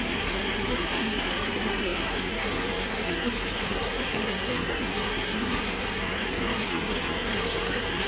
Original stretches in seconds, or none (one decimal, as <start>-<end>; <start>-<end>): none